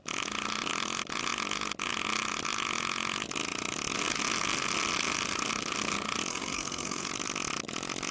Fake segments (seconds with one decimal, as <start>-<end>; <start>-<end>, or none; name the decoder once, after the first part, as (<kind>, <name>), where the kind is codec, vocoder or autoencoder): 6.3-7.1 (codec, SNAC)